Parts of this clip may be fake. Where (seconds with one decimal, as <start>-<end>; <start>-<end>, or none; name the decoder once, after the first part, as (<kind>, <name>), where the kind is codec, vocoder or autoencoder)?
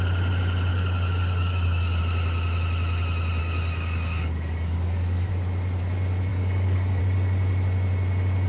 0.7-2.0 (codec, DAC); 3.4-5.3; 6.3-7.0